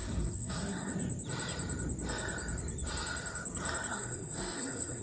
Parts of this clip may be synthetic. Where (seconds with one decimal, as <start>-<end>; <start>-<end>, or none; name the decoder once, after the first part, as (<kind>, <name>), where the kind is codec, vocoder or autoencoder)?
0.0-0.9 (codec, SNAC); 3.9-5.0